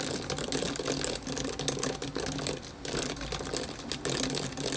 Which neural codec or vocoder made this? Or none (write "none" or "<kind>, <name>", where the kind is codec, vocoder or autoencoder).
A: none